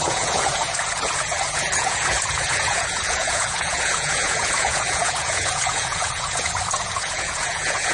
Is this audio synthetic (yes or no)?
yes